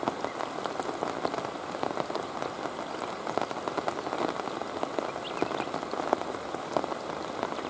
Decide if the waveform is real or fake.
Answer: real